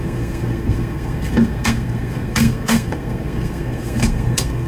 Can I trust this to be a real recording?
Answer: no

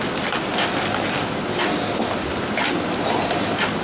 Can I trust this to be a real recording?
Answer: yes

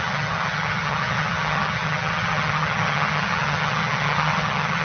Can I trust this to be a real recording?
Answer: no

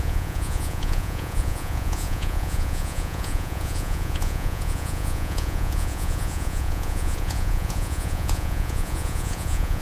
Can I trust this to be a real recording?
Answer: no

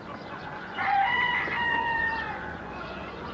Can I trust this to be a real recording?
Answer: no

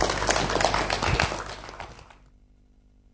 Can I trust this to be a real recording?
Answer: yes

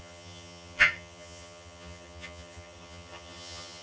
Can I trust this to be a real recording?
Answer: no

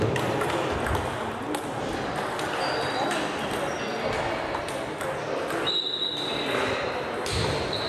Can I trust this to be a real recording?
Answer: yes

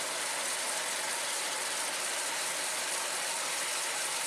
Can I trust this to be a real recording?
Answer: yes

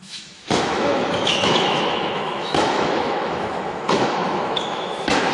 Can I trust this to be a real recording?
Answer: no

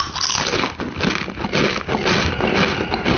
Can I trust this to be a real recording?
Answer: yes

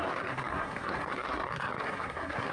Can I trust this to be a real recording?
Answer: no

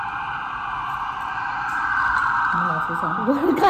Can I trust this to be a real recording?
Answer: yes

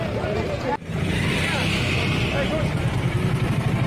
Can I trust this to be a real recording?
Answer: yes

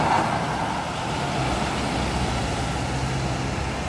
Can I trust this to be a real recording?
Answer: yes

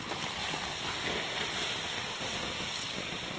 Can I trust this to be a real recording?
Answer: yes